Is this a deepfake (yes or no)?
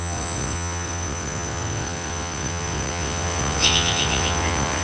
yes